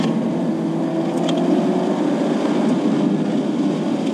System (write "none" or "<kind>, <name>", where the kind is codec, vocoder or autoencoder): none